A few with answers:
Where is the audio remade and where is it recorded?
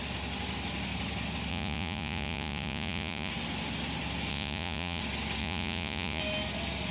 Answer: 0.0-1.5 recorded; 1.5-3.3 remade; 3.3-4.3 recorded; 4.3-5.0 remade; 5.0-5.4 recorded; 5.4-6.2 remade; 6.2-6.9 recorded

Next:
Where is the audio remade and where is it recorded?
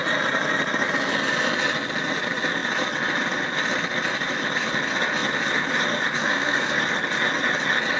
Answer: 0.0-6.2 recorded; 6.2-6.8 remade; 6.8-8.0 recorded